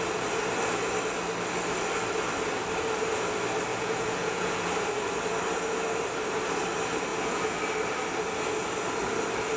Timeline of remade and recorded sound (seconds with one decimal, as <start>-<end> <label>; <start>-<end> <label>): 0.0-3.7 recorded; 3.7-4.7 remade; 4.7-7.1 recorded; 7.1-7.6 remade; 7.6-9.6 recorded